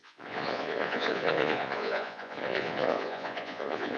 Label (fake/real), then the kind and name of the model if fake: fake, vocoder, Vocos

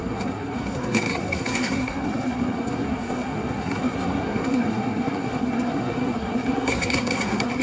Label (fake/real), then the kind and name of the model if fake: fake, codec, SNAC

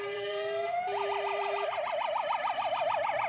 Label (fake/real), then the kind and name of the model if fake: fake, vocoder, BigVGAN v2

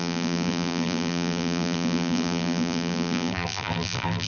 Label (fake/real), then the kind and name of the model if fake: fake, vocoder, BigVGAN v2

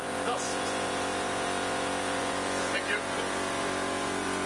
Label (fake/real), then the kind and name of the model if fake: fake, vocoder, Vocos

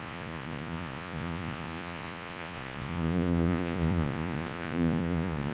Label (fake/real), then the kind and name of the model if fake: fake, vocoder, Vocos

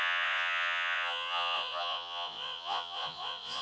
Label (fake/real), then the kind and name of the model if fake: fake, vocoder, Vocos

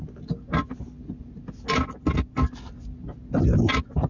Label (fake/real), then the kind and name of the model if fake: real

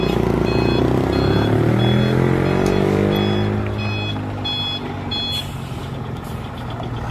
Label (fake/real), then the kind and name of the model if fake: real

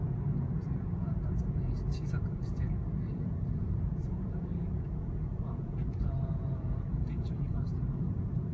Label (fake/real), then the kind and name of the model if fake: fake, vocoder, Vocos